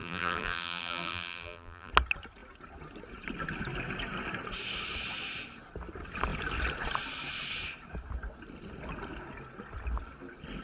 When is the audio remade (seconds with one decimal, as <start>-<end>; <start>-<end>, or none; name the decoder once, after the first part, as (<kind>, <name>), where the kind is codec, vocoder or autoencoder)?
0.0-1.9 (vocoder, BigVGAN v2)